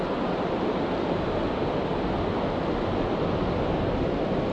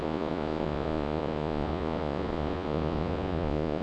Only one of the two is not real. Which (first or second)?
second